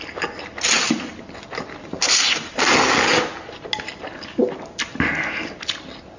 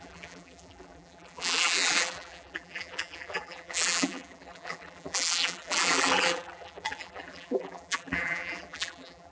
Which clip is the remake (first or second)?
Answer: second